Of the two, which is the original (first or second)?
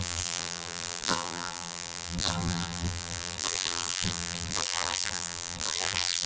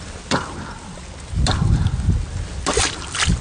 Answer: second